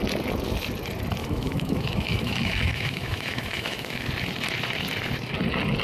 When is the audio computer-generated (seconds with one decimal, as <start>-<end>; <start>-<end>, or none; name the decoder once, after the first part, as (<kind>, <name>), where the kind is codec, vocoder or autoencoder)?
1.2-4.1 (autoencoder, DAC-VAE)